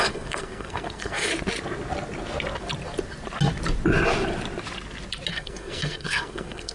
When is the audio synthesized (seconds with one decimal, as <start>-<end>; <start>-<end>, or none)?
0.0-1.3; 5.3-6.7